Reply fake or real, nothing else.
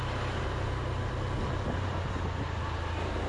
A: real